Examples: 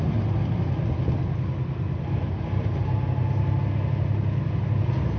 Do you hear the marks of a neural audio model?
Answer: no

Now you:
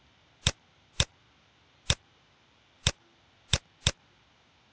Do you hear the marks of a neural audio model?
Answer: no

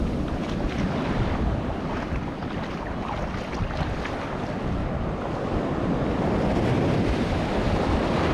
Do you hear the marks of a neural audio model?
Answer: no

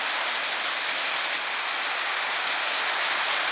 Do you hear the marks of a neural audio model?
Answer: no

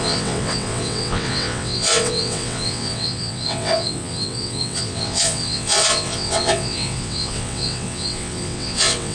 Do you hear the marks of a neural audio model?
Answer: yes